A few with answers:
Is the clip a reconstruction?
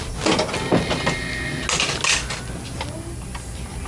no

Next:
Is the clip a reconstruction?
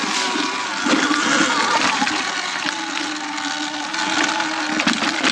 no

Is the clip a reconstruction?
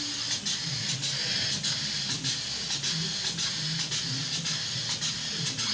no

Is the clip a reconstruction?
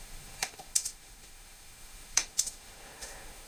yes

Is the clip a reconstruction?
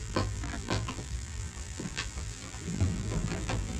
yes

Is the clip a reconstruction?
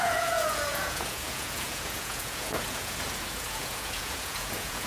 yes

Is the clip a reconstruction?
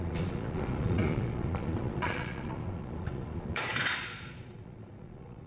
yes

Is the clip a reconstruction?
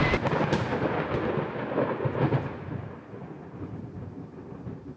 no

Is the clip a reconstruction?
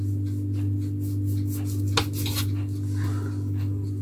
no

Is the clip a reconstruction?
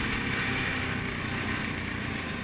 no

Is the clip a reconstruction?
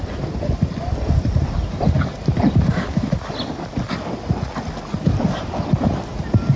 no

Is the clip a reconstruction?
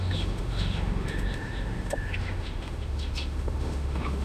yes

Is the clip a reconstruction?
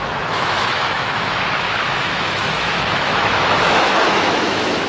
yes